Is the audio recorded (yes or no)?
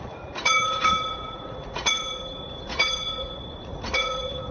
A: no